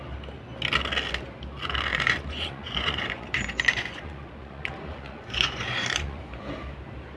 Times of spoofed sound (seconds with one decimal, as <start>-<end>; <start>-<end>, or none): 1.9-6.2